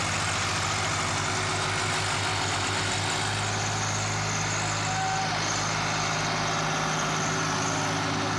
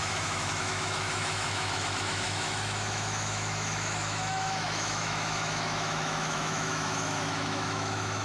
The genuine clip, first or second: first